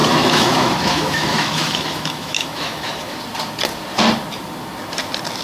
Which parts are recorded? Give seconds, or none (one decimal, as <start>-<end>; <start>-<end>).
3.2-5.4